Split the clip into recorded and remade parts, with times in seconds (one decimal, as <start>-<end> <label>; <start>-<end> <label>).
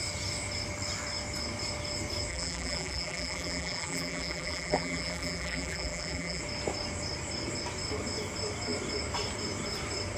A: 0.0-2.3 recorded; 2.3-6.4 remade; 6.4-10.2 recorded